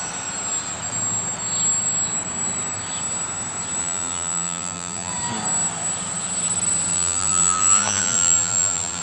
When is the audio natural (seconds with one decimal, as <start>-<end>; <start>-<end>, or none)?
0.0-3.8; 5.1-6.9